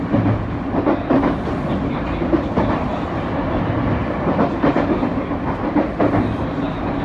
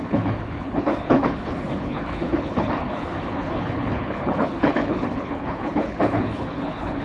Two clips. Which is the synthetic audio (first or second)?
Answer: second